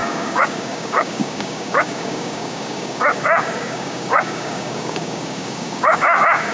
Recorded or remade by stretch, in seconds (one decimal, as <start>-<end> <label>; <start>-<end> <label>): 0.0-6.5 remade